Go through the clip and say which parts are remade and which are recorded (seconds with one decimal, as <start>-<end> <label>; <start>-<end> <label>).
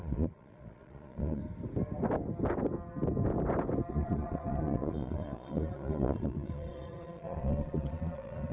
0.0-1.4 remade; 1.4-3.9 recorded; 3.9-8.5 remade